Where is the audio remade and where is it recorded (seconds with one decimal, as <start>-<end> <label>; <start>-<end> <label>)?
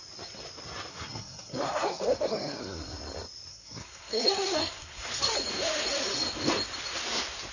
0.0-0.9 recorded; 0.9-2.8 remade; 2.8-3.5 recorded; 3.5-5.1 remade; 5.1-7.5 recorded